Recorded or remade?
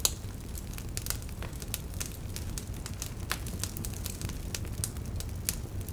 recorded